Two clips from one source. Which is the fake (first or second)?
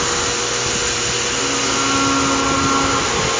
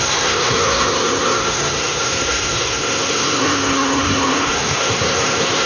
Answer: second